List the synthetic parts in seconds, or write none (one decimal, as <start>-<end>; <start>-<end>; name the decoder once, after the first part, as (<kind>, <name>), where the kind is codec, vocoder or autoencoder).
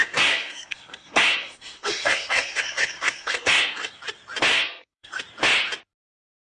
0.0-4.0 (codec, SNAC); 4.5-5.2